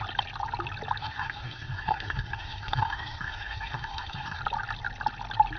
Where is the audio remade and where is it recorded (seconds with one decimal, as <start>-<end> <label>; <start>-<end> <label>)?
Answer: 0.0-1.0 recorded; 1.0-4.4 remade; 4.4-5.6 recorded